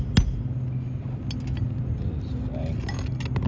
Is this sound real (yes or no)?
yes